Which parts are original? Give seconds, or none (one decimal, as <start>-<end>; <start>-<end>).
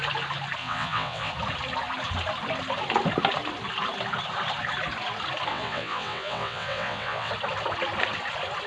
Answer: 0.0-0.6; 1.3-5.5; 7.3-8.7